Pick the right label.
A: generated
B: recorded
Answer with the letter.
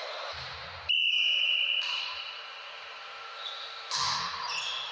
A